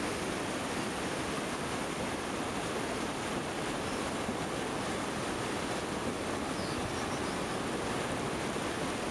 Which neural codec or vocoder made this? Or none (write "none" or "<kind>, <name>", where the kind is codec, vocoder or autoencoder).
none